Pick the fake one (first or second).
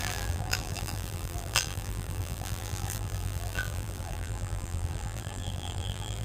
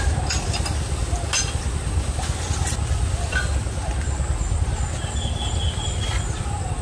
first